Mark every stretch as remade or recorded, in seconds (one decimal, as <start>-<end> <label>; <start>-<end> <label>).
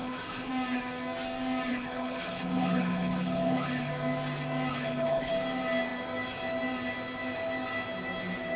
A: 0.0-0.5 remade; 0.5-1.7 recorded; 1.7-3.9 remade; 3.9-4.7 recorded; 4.7-5.3 remade; 5.3-8.6 recorded